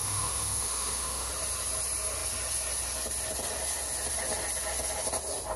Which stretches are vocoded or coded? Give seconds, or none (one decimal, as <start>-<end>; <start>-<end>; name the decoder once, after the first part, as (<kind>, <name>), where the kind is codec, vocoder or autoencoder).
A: 0.0-1.3 (autoencoder, DAC-VAE)